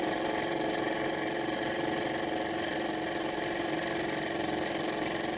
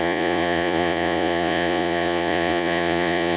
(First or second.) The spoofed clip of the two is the second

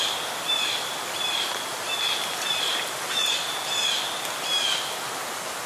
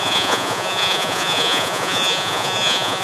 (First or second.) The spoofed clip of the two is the second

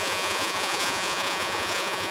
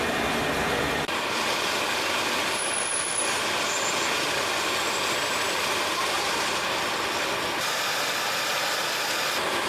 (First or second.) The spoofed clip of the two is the first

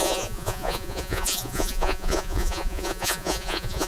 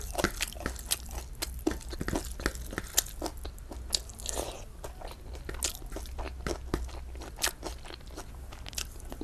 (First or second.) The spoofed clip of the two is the first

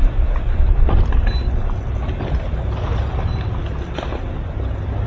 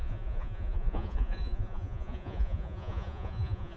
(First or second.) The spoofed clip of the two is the second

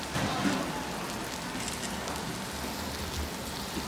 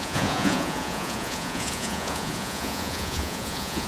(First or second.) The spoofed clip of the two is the second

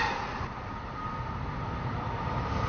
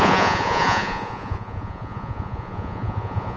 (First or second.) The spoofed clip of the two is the second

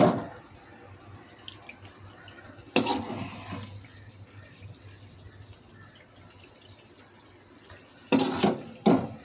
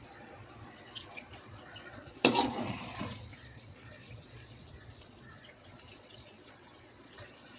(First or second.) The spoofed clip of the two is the second